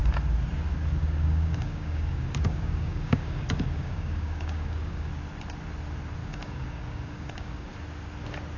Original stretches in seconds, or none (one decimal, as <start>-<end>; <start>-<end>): 0.0-1.0; 5.1-6.2; 7.7-8.6